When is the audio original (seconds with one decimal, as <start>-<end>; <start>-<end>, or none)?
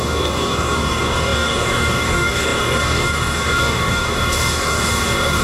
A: none